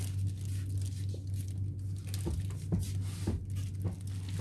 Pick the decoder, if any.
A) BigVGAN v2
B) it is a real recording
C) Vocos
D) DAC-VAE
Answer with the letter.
B